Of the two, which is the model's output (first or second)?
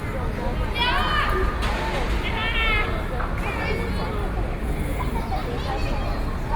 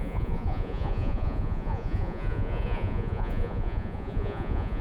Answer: second